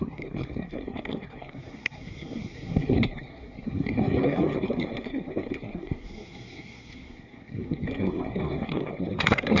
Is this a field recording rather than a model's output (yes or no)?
no